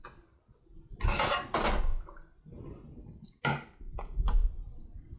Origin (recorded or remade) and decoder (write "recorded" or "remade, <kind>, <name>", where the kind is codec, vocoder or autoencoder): recorded